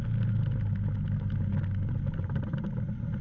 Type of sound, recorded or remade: recorded